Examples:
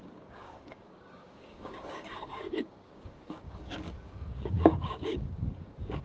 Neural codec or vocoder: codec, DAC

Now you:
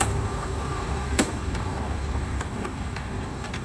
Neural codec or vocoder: codec, DAC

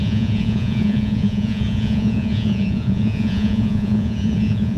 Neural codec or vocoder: vocoder, Vocos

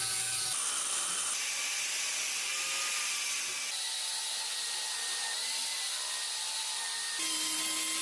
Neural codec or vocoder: none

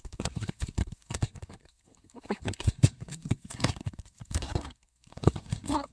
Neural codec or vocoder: codec, SNAC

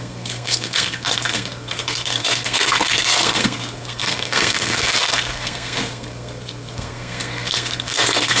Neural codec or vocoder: codec, SNAC